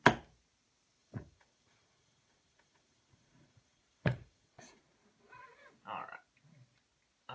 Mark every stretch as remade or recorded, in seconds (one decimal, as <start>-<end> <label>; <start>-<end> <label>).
0.0-1.0 recorded; 1.0-4.8 remade; 4.8-7.3 recorded